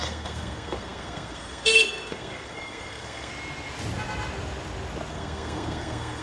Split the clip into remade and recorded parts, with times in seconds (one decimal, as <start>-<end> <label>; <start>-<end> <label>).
0.0-3.3 remade; 3.3-5.1 recorded; 5.1-6.2 remade